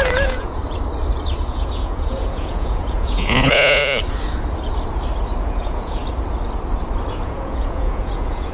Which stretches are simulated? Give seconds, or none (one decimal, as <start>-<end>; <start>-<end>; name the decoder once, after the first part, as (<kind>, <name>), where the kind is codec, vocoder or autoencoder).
0.0-0.6 (vocoder, Vocos); 1.6-3.8; 5.4-6.0; 7.1-8.5